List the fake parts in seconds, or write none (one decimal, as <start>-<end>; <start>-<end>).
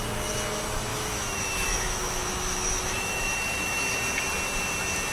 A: 0.9-4.0